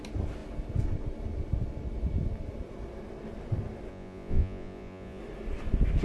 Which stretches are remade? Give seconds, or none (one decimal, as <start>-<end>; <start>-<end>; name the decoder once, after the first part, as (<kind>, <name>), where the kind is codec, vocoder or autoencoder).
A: 3.9-5.2 (vocoder, Vocos)